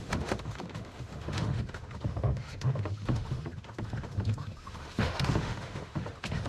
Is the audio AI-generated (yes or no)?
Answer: yes